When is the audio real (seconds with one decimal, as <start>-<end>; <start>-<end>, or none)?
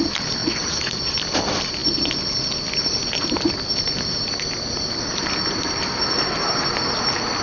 0.0-0.4; 1.0-7.4